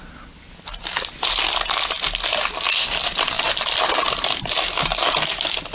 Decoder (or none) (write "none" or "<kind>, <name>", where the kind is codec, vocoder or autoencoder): none